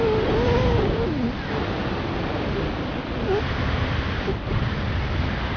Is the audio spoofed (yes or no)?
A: no